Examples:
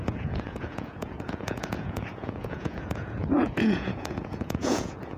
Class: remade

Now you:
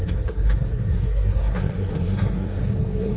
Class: remade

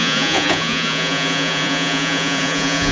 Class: remade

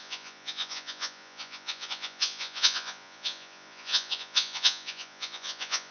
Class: remade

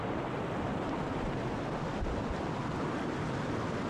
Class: recorded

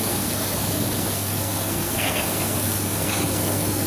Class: remade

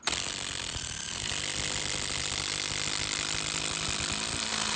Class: recorded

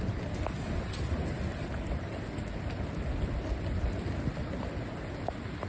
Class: recorded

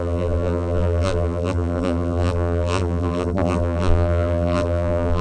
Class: remade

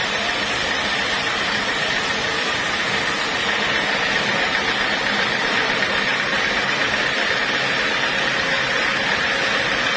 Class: recorded